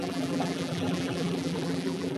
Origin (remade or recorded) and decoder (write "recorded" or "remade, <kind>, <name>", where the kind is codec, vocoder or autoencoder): remade, vocoder, BigVGAN v2